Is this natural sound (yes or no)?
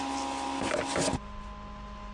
yes